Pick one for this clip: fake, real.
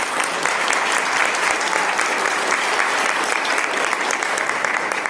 fake